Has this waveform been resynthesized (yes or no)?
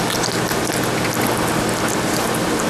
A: no